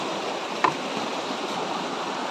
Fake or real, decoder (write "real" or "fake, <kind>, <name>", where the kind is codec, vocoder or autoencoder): real